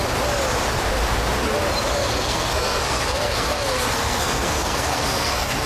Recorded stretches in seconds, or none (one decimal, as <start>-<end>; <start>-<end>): 0.0-2.0